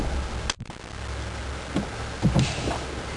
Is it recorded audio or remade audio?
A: recorded